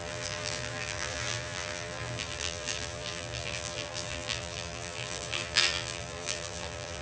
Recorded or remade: remade